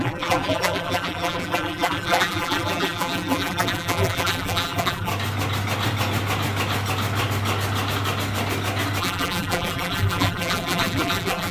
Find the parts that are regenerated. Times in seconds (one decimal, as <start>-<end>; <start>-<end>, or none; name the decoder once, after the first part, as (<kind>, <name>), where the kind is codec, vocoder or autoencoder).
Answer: 0.0-5.1 (vocoder, BigVGAN v2); 9.0-11.5